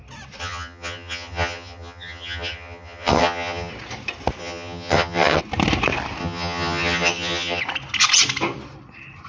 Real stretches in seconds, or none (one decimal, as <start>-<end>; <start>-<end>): 0.0-0.4; 3.7-4.4; 5.4-6.2; 7.6-9.3